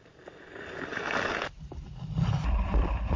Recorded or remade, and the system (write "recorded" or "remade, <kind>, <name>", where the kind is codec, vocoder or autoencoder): remade, vocoder, BigVGAN v2